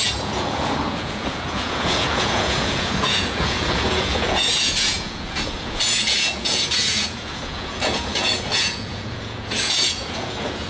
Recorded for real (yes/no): no